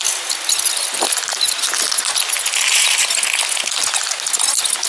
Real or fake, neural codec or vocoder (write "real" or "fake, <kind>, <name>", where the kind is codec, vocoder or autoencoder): real